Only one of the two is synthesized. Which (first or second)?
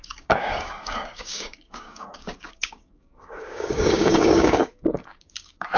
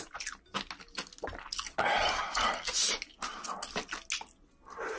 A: first